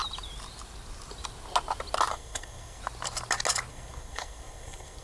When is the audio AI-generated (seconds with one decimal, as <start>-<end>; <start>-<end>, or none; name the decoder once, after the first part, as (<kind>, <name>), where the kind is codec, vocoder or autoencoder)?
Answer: 2.1-2.8 (codec, SNAC); 3.7-5.0